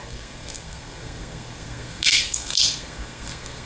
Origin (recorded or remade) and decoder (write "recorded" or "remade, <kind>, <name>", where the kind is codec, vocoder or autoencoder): remade, codec, SNAC